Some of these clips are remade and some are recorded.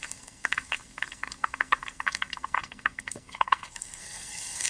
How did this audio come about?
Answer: remade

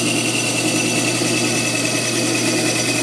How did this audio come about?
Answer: recorded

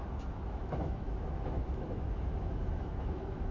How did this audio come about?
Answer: remade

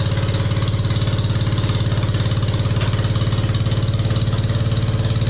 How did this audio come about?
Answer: recorded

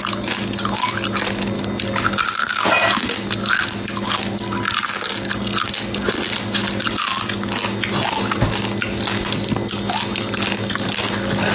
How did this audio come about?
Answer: recorded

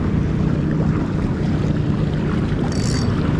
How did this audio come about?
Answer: recorded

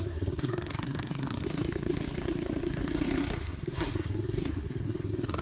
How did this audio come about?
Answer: remade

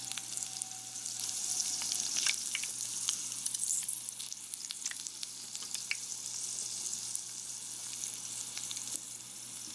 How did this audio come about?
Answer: recorded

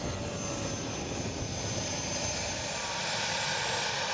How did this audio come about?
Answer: recorded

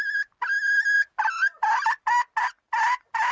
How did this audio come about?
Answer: recorded